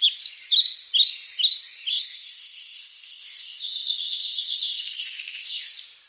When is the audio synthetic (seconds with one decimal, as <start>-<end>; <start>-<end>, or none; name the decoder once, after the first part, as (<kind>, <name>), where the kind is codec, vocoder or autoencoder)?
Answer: 1.9-5.6 (codec, ZipCodec)